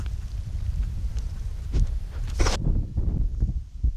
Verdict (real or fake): fake